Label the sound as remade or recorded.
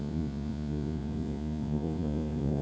remade